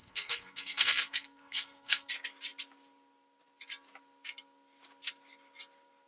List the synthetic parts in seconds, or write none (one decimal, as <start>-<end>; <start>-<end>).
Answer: 0.0-2.1